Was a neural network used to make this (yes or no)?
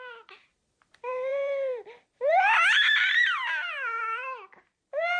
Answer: yes